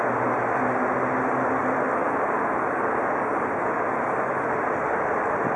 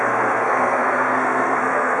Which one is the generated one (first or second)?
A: second